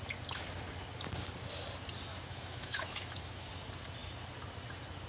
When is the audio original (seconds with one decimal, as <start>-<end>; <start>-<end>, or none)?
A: 0.0-2.1; 3.5-5.1